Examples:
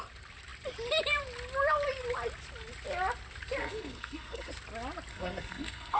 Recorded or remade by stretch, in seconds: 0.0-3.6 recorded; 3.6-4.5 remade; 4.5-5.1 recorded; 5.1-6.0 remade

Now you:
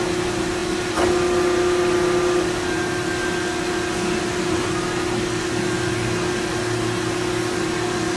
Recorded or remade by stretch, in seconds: 0.0-8.2 recorded